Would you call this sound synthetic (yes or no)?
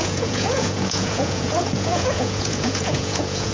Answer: yes